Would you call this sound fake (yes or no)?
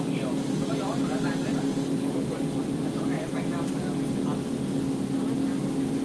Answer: no